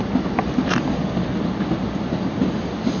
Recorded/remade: recorded